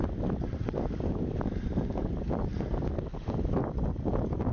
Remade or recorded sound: recorded